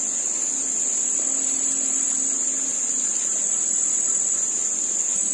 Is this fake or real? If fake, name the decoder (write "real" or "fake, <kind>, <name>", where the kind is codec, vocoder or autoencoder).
real